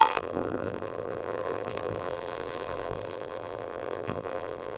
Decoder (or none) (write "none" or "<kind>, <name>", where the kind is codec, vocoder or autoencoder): vocoder, BigVGAN v2